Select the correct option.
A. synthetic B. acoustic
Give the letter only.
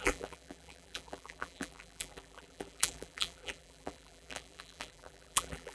A